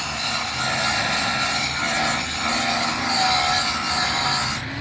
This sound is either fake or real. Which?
real